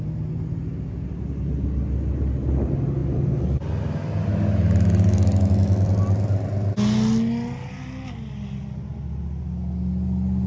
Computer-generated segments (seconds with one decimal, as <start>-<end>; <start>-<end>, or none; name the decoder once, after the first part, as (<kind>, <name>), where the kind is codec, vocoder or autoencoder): none